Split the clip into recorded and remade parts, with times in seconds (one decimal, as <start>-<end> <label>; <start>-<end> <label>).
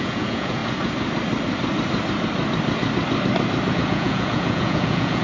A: 0.0-0.6 remade; 0.6-3.7 recorded; 3.7-5.2 remade